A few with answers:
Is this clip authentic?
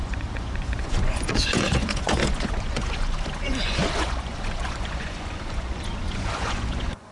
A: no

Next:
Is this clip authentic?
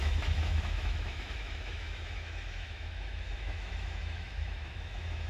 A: no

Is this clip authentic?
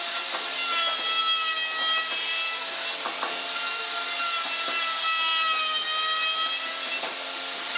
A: yes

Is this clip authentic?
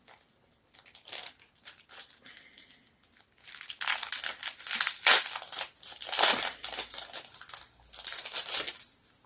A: yes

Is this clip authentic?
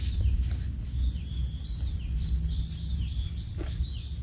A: yes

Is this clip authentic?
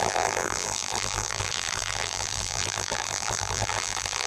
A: no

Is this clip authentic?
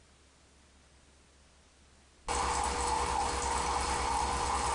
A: yes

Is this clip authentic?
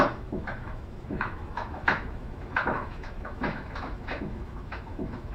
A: no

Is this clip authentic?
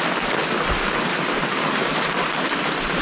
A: yes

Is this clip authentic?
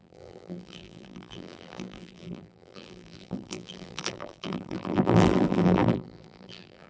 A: no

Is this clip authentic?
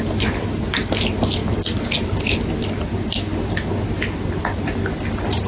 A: yes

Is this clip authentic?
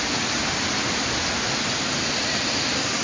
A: yes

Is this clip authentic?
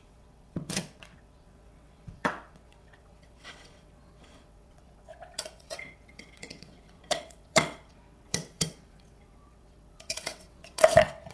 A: no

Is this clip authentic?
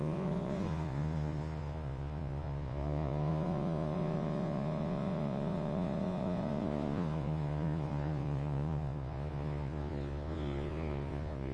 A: no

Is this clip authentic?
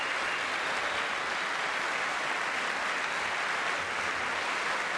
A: yes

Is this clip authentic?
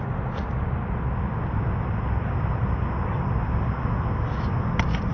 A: yes